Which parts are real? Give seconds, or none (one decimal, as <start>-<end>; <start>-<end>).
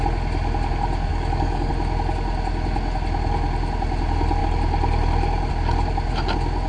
0.0-1.1; 1.7-6.7